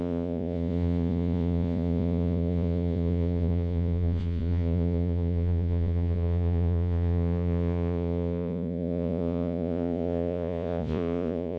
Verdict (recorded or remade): remade